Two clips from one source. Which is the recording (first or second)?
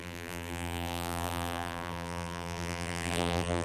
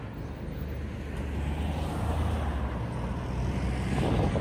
second